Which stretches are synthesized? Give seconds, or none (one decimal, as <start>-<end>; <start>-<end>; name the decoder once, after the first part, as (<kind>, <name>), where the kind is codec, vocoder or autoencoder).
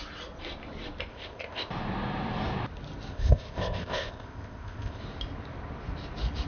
1.1-1.7 (codec, ZipCodec); 3.1-5.0